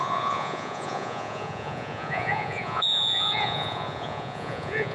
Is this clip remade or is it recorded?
remade